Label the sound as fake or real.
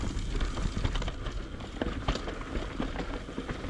real